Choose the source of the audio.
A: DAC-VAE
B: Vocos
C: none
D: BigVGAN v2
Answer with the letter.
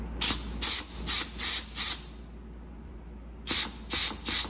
C